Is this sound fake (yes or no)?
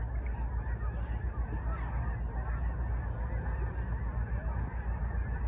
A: no